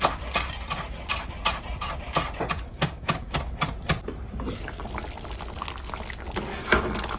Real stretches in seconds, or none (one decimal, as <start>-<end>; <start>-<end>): 0.0-2.7; 3.4-7.2